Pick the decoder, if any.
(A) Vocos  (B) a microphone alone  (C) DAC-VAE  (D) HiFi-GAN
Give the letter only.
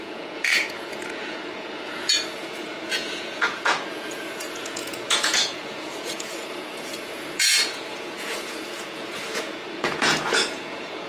A